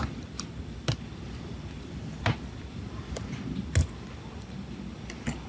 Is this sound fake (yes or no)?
no